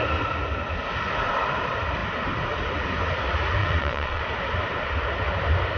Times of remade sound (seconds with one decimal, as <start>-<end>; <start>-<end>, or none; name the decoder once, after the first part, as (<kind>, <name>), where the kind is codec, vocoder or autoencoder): 3.6-4.2 (vocoder, WaveNeXt)